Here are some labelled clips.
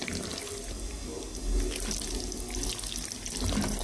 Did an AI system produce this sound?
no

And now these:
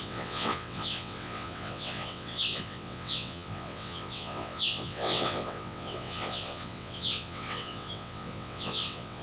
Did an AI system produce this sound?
yes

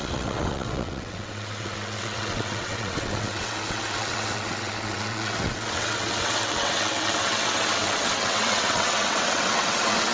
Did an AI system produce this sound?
yes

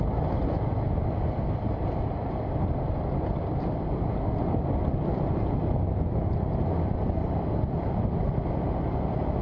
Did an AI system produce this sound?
no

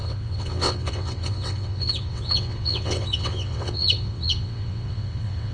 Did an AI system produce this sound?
yes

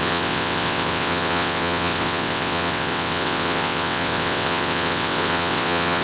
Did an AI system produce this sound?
yes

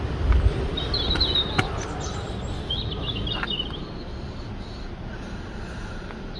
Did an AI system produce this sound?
no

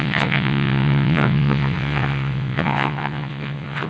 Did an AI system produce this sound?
yes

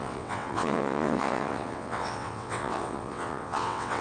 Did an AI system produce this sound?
yes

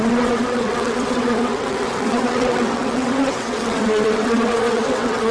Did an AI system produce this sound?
yes